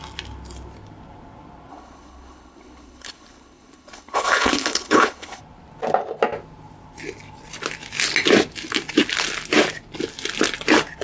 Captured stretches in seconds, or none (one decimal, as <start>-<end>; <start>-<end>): 0.0-1.7; 5.4-11.0